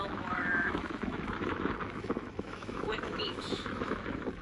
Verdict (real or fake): fake